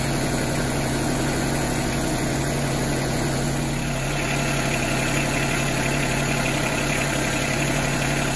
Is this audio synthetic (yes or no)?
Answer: yes